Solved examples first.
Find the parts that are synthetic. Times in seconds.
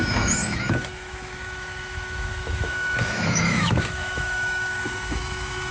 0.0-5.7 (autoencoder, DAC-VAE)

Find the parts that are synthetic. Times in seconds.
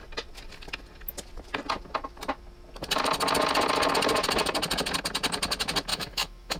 5.9-6.6 (autoencoder, DAC-VAE)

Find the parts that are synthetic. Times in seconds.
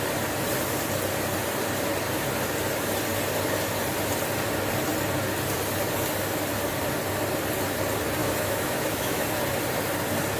8.2-9.3 (autoencoder, DAC-VAE)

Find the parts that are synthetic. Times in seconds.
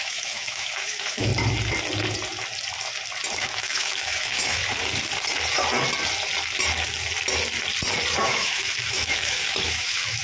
0.0-1.3 (autoencoder, DAC-VAE); 3.4-4.6; 8.2-10.2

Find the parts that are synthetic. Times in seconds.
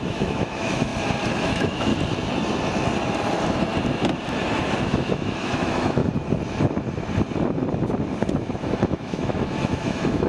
0.0-0.9 (autoencoder, DAC-VAE); 1.4-1.9; 4.8-6.0; 8.6-10.3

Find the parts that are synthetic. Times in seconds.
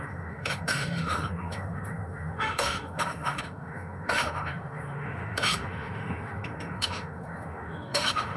0.0-8.4 (autoencoder, DAC-VAE)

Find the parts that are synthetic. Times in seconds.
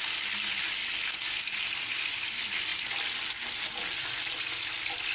none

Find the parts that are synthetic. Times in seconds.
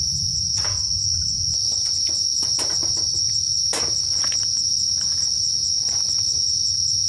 none